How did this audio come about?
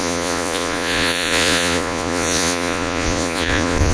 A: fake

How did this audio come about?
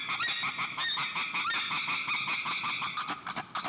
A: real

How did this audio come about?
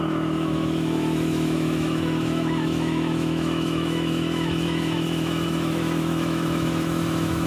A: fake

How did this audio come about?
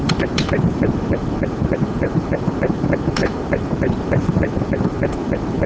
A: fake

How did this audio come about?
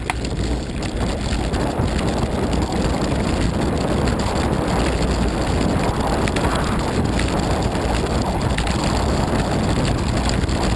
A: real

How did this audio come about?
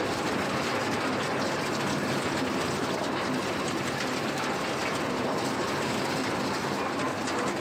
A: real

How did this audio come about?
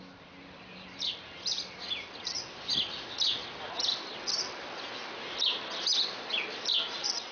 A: real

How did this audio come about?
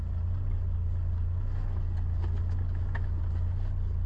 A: real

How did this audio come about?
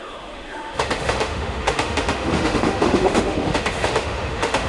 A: fake